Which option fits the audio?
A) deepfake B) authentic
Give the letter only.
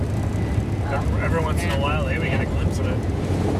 B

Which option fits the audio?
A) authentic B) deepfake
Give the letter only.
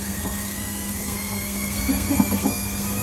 B